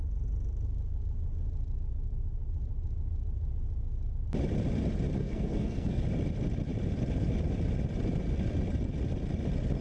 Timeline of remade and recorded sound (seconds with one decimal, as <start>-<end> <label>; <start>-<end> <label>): 0.0-5.2 recorded; 5.2-6.0 remade; 6.0-9.8 recorded